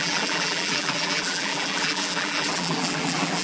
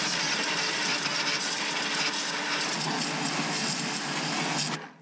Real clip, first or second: second